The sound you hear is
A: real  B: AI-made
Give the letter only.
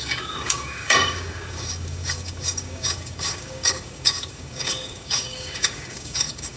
B